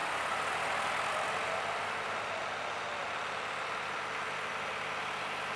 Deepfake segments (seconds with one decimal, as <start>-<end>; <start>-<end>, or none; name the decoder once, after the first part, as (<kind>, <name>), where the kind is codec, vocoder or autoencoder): none